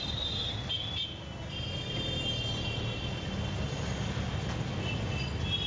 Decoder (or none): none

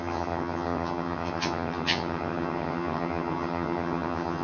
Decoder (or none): vocoder, HiFi-GAN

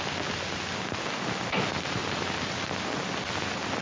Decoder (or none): none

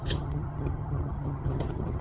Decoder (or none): vocoder, HiFi-GAN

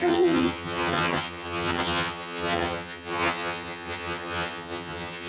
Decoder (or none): vocoder, HiFi-GAN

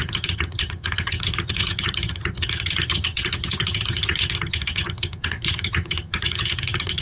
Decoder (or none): vocoder, HiFi-GAN